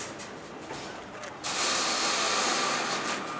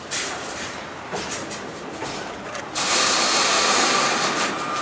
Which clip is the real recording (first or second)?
first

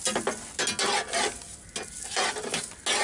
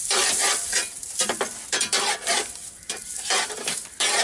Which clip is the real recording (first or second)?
first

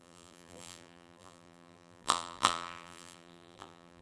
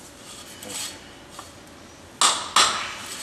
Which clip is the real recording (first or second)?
second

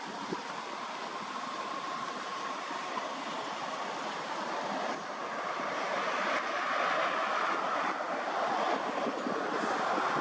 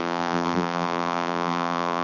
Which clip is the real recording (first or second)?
first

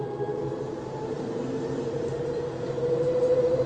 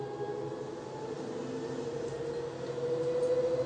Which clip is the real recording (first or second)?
second